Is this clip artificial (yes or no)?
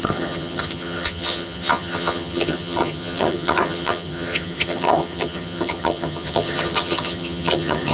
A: yes